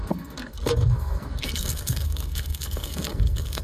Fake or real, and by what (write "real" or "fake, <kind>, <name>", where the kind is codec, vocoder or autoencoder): fake, codec, SNAC